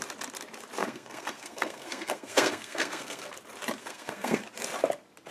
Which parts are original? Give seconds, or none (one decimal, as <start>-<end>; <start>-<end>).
0.0-0.8; 3.3-3.8; 4.4-5.3

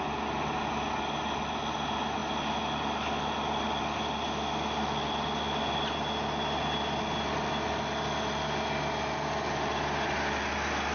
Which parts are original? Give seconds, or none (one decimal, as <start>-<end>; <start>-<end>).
0.0-10.9

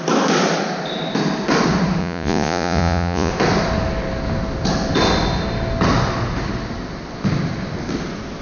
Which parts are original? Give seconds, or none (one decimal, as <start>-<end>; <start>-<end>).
0.0-2.0; 3.3-8.4

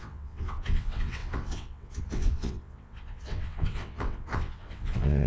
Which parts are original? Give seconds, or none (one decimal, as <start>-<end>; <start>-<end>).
none

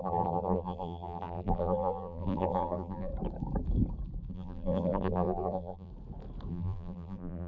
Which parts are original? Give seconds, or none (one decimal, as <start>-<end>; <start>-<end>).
3.1-4.3; 5.9-6.5

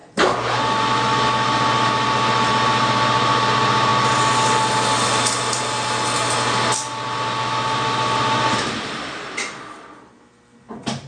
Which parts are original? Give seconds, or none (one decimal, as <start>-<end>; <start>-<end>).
0.0-11.1

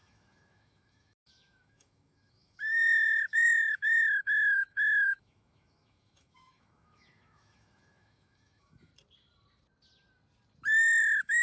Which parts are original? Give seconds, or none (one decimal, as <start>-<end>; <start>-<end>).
8.9-11.0

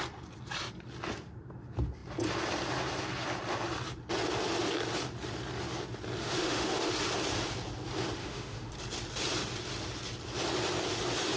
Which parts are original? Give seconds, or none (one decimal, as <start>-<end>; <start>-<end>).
0.0-6.2; 6.9-8.2; 8.7-11.4